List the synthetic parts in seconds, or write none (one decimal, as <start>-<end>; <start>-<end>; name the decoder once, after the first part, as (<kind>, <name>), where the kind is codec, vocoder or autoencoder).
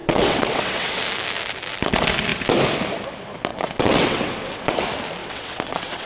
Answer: 0.0-1.0 (vocoder, WaveNeXt); 3.5-4.6; 5.2-6.1